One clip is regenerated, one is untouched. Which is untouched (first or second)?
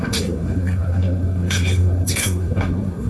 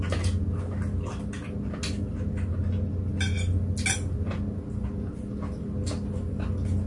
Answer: second